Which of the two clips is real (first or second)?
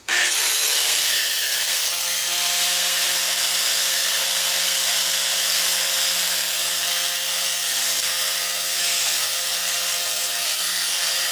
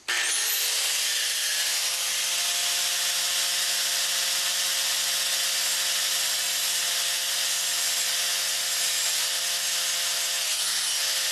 second